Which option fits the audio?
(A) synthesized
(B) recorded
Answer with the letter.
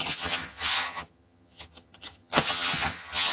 A